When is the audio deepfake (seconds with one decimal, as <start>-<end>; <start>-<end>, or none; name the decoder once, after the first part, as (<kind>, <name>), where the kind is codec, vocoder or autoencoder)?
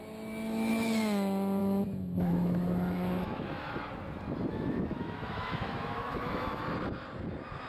1.6-3.8 (autoencoder, DAC-VAE); 4.5-6.6